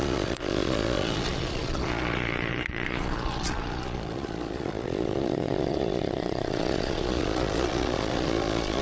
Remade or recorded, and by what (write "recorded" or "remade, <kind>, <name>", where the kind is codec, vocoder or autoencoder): remade, vocoder, Vocos